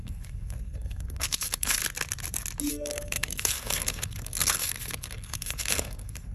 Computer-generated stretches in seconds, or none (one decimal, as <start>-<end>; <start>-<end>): 0.0-1.8; 2.7-6.3